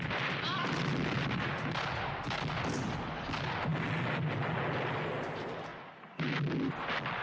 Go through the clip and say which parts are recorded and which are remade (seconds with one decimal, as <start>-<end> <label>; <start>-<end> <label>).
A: 0.0-7.2 recorded